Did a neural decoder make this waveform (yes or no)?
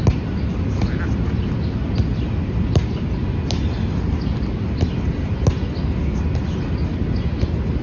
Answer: no